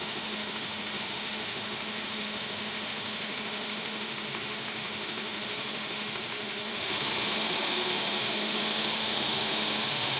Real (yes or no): no